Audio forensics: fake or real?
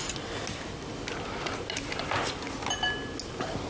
real